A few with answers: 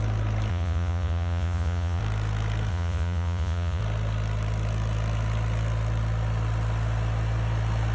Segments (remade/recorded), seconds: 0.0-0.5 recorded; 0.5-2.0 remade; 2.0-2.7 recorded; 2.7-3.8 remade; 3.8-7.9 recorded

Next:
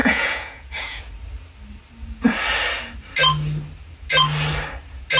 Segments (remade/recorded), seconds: 0.0-1.0 remade; 1.0-5.2 recorded

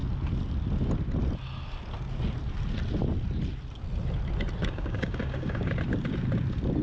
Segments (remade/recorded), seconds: 0.0-4.6 recorded; 4.6-5.7 remade; 5.7-6.8 recorded

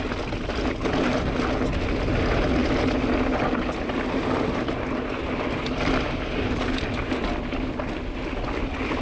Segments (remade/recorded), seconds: 0.0-9.0 recorded